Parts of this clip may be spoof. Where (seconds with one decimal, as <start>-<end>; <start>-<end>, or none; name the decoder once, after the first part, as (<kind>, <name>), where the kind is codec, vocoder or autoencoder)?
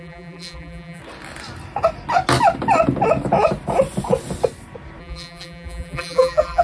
0.0-1.0 (vocoder, BigVGAN v2); 5.0-6.6